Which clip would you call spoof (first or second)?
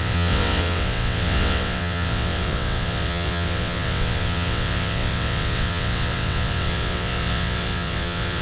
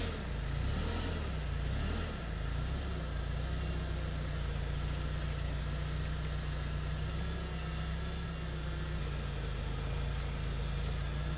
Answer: first